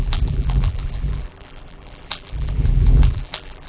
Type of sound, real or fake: fake